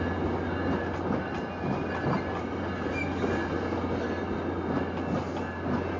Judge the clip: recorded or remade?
recorded